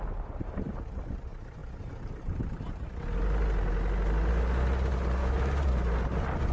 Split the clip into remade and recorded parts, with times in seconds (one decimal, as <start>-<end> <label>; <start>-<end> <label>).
0.0-5.2 recorded; 5.2-5.7 remade; 5.7-6.5 recorded